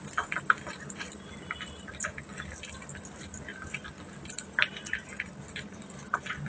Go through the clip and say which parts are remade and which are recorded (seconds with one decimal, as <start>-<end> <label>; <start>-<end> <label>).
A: 0.0-6.5 recorded